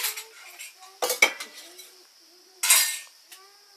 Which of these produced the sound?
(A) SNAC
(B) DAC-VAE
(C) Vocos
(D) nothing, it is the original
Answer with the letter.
D